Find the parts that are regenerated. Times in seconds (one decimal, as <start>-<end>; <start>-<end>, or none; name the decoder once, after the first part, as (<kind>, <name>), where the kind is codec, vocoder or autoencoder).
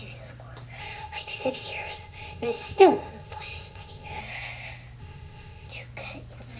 0.8-4.2 (codec, ZipCodec); 5.0-5.7